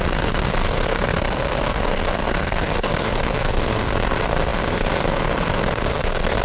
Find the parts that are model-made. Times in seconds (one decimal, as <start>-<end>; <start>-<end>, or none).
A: 0.0-6.4